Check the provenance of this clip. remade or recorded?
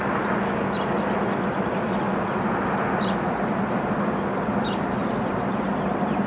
recorded